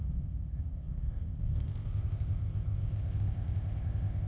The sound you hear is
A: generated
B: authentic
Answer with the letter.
A